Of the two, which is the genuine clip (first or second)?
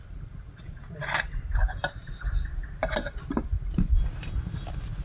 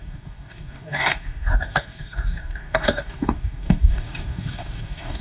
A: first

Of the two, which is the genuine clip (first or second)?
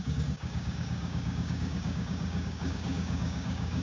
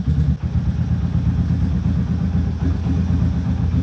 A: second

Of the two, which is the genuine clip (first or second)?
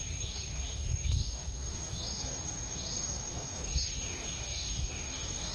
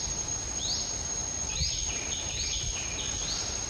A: second